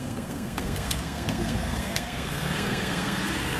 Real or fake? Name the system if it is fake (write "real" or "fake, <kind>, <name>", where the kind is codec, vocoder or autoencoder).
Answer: fake, codec, SNAC